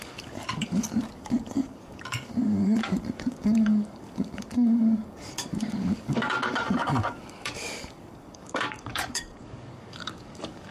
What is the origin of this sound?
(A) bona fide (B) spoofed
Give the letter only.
B